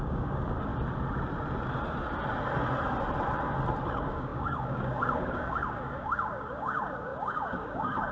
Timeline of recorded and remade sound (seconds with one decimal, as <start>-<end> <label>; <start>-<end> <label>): 0.0-0.7 remade; 0.7-3.9 recorded; 3.9-8.1 remade